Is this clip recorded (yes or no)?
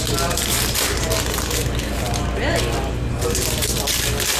yes